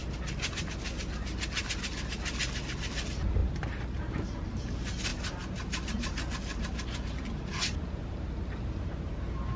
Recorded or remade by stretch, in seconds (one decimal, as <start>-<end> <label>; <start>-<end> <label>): 0.0-9.6 recorded